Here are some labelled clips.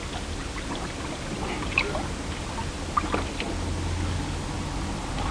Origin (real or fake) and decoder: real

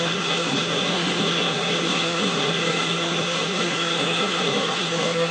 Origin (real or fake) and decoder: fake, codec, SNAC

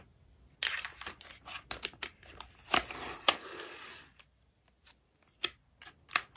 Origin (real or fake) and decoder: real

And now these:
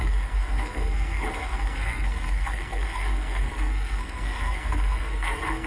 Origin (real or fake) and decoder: fake, codec, SNAC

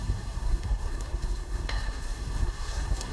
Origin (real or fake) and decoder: fake, codec, SNAC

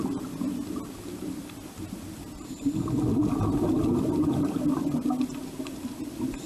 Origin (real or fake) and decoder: real